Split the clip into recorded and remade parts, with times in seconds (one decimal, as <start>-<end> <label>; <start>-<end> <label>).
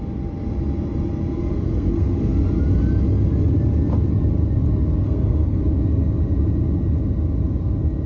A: 0.0-1.5 recorded; 1.5-2.2 remade; 2.2-5.0 recorded; 5.0-5.6 remade; 5.6-8.1 recorded